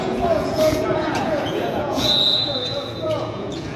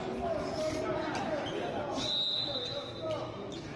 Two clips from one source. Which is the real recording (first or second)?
second